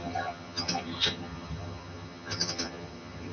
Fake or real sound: fake